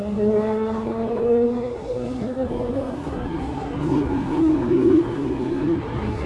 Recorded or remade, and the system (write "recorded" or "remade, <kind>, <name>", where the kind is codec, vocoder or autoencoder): remade, codec, SNAC